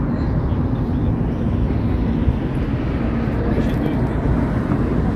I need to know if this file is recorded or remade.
recorded